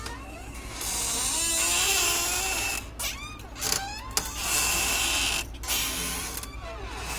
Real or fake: real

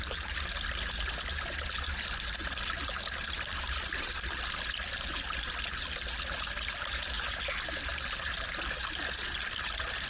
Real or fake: real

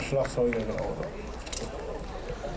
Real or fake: real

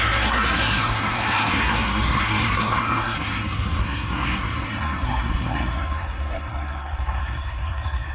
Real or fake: fake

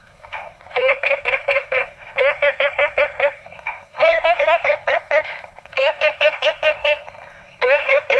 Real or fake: fake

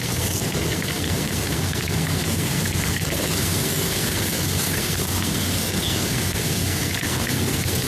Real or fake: fake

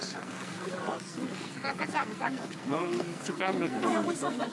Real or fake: fake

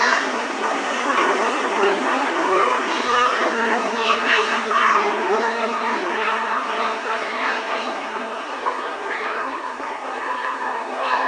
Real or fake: fake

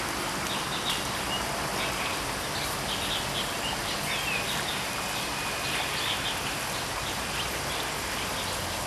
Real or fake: real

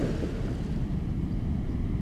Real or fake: real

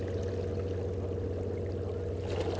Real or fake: real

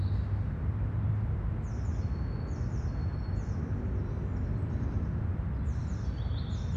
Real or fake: real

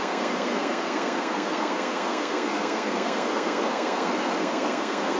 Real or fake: fake